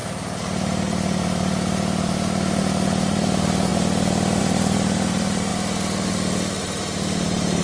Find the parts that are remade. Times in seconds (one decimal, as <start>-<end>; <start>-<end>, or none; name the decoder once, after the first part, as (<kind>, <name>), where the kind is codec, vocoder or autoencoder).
0.0-3.7 (vocoder, BigVGAN v2); 4.4-5.5; 6.6-7.6

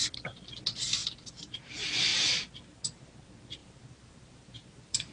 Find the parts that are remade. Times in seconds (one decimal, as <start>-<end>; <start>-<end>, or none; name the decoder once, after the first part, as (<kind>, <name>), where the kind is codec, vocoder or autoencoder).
1.0-1.7 (vocoder, BigVGAN v2); 2.1-2.9; 3.6-5.1

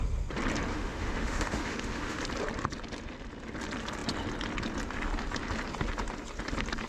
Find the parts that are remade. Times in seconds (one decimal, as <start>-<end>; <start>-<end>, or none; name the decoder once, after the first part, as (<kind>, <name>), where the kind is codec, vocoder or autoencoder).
0.7-2.2 (autoencoder, DAC-VAE)